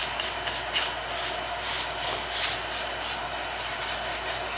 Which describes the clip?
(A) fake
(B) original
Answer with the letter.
B